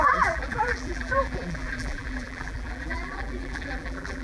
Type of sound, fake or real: fake